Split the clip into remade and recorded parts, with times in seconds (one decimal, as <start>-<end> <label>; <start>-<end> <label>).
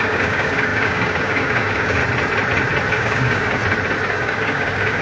0.0-2.0 remade; 2.0-2.9 recorded; 2.9-3.6 remade; 3.6-4.1 recorded; 4.1-5.0 remade